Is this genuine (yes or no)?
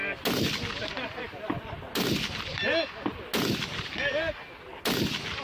yes